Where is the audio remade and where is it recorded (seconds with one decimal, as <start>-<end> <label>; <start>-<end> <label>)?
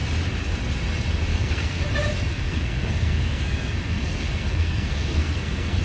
0.0-1.3 recorded; 1.3-1.8 remade; 1.8-2.3 recorded; 2.3-5.8 remade